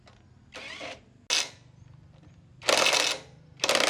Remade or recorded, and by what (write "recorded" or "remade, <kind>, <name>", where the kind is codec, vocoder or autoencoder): recorded